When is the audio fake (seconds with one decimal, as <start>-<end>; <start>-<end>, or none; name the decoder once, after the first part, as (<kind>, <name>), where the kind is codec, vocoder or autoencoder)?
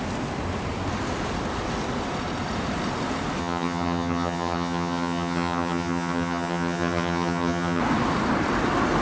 3.4-7.8 (vocoder, HiFi-GAN)